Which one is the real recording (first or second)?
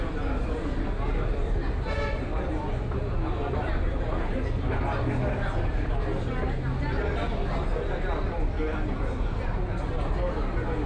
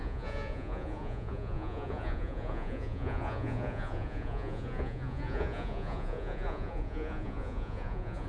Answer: first